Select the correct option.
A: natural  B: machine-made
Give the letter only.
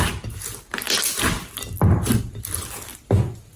A